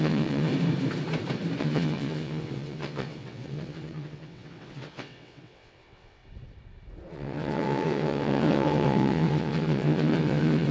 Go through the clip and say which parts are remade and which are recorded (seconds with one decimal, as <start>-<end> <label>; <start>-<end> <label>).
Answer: 0.0-0.5 remade; 0.5-1.6 recorded; 1.6-6.2 remade; 6.2-7.1 recorded; 7.1-10.7 remade